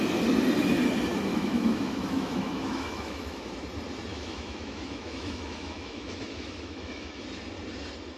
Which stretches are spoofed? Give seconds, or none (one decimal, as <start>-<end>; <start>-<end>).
1.3-3.5; 4.1-7.2